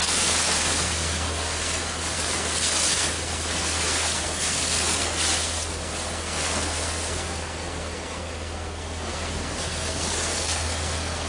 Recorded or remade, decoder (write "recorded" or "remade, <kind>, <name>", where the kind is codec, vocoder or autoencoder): remade, codec, SNAC